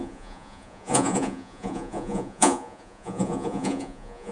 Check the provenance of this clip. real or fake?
fake